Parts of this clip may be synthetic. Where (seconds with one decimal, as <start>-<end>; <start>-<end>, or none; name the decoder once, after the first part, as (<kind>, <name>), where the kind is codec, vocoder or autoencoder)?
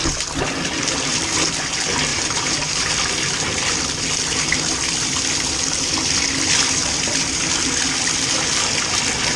2.1-2.9 (vocoder, BigVGAN v2)